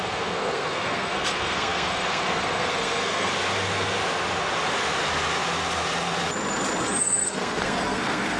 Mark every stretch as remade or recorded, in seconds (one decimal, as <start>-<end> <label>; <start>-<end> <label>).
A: 0.0-3.3 remade; 3.3-7.0 recorded; 7.0-8.4 remade